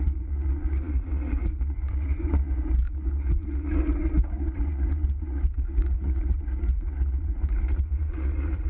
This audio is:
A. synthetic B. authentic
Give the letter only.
A